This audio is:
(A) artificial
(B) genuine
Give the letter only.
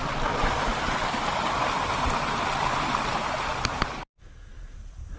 B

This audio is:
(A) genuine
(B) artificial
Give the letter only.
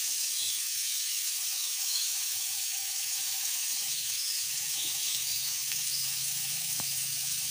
B